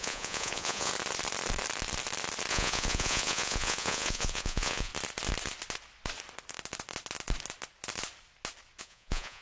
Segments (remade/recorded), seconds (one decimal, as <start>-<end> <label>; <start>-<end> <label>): 0.0-0.9 remade; 0.9-2.5 recorded; 2.5-4.9 remade; 4.9-8.8 recorded; 8.8-9.4 remade